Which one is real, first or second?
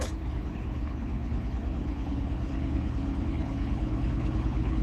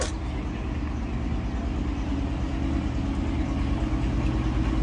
second